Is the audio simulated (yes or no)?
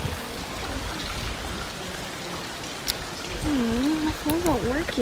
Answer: no